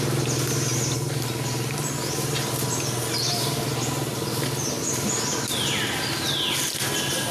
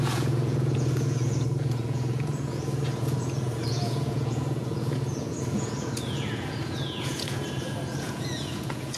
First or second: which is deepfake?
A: second